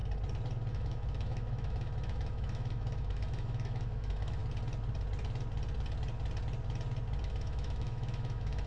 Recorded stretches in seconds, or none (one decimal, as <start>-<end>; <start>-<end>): 0.0-0.7; 4.4-7.2